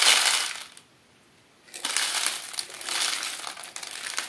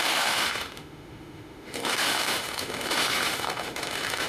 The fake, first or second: second